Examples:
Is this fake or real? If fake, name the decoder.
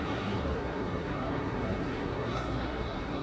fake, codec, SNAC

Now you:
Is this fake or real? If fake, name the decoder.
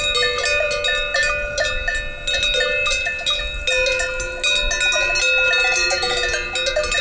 real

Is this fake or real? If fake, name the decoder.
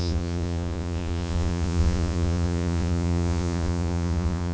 fake, vocoder, Vocos